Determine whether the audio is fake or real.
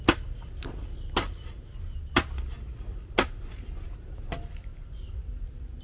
real